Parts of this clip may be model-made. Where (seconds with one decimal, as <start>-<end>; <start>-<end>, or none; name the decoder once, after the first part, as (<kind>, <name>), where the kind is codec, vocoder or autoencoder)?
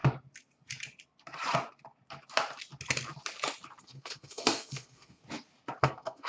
3.8-5.2 (codec, SNAC); 5.8-6.3